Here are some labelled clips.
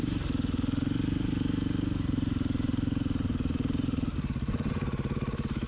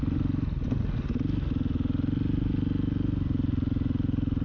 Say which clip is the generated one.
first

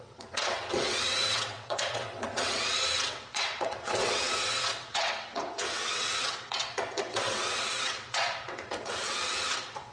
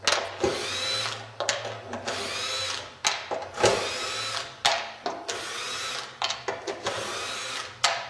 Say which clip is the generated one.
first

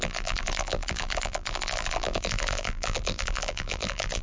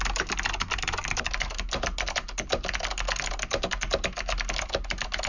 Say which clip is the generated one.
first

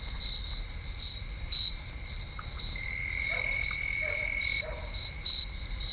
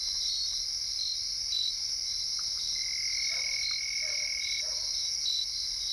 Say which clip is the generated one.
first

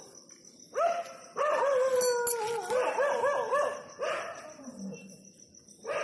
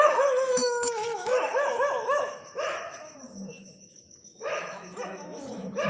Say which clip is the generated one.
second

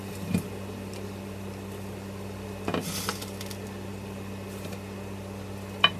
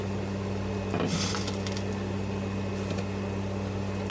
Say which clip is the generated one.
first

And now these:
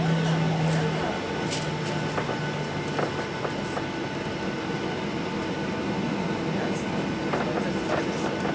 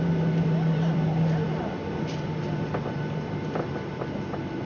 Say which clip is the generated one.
second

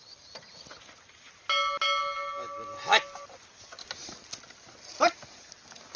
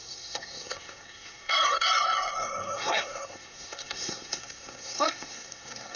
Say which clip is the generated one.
second